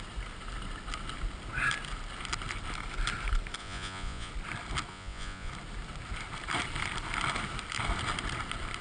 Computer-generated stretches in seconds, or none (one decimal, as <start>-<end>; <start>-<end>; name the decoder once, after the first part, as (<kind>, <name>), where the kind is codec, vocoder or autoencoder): 3.6-4.3 (vocoder, Vocos); 4.9-5.5